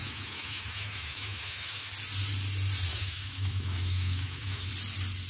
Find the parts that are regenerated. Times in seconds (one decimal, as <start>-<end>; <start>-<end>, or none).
0.0-1.9; 2.9-4.7